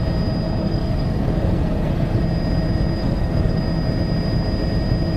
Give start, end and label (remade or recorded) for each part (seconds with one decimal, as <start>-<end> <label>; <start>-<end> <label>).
0.0-0.6 recorded; 0.6-2.2 remade; 2.2-3.0 recorded; 3.0-3.6 remade; 3.6-5.2 recorded